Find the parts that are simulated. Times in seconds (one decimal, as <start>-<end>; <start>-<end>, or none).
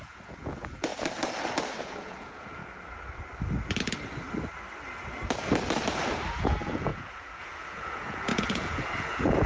0.0-0.9; 1.8-2.6; 6.4-9.5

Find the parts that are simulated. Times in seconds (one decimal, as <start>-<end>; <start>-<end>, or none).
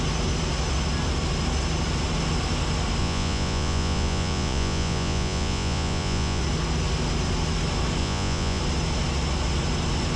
3.0-6.4; 8.0-8.6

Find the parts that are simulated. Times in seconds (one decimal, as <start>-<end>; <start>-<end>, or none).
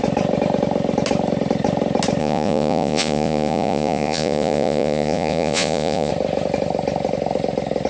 2.2-6.1